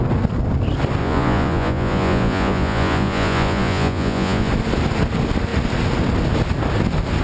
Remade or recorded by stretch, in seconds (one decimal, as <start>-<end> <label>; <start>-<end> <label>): 0.0-1.0 recorded; 1.0-4.5 remade; 4.5-7.2 recorded